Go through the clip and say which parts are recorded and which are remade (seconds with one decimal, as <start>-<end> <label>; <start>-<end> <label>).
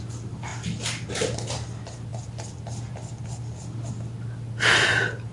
0.0-5.3 recorded